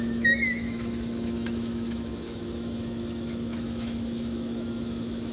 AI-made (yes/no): yes